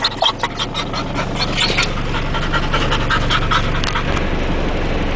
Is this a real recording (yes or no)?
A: yes